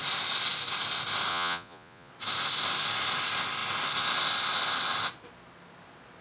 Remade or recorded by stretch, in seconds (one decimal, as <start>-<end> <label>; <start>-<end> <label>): 0.0-1.3 recorded; 1.3-2.1 remade; 2.1-6.2 recorded